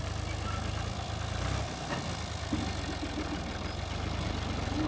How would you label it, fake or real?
real